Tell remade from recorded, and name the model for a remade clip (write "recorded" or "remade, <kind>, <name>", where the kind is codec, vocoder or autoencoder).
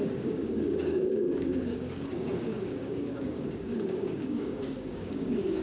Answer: remade, codec, DAC